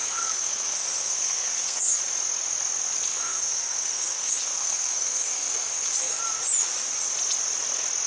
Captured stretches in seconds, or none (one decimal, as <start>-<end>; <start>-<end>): 2.0-3.1; 6.2-8.1